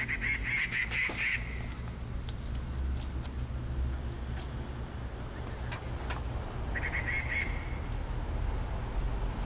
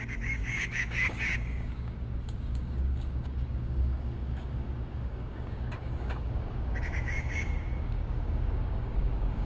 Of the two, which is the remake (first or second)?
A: second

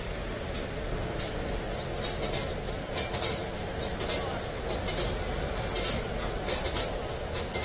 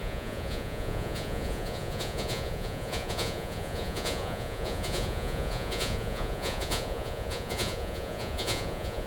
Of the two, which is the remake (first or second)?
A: second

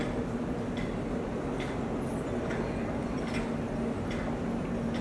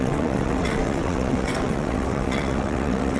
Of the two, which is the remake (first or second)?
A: second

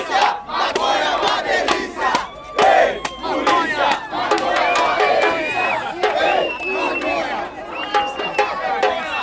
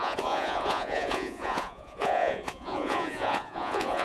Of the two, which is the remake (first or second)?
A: second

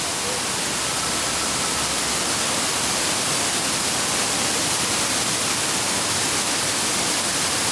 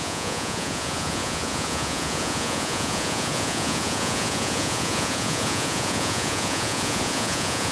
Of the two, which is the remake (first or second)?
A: second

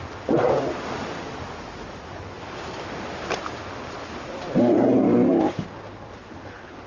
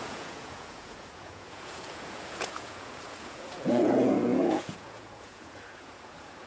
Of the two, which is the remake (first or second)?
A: second